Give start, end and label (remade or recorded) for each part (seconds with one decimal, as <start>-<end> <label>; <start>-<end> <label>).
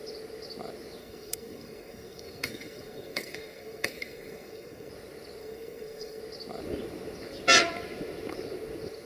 0.0-1.0 recorded; 1.0-4.9 remade; 4.9-5.4 recorded; 5.4-6.2 remade; 6.2-9.1 recorded